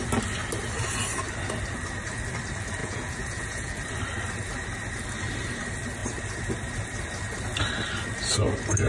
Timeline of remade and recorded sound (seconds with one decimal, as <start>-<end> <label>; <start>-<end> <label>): 0.0-2.8 recorded; 2.8-3.7 remade; 3.7-8.9 recorded